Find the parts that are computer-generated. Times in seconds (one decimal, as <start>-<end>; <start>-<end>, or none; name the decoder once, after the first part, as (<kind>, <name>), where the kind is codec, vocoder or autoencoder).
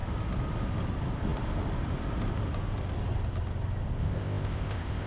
4.0-5.1 (codec, ZipCodec)